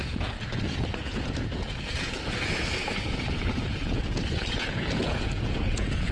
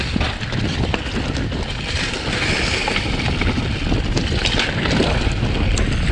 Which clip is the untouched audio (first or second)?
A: second